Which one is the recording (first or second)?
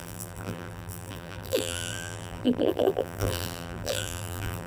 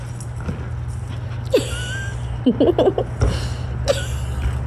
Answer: second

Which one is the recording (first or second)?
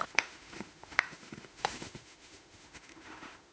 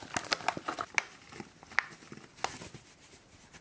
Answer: second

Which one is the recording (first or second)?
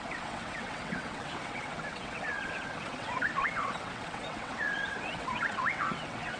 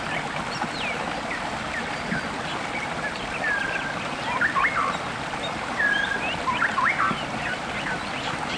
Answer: second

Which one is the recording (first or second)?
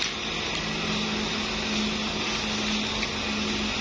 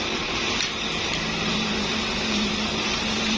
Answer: first